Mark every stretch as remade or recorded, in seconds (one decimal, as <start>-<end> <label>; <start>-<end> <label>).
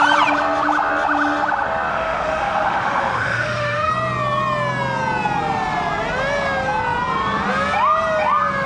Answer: 0.0-1.9 recorded; 1.9-3.9 remade; 3.9-8.7 recorded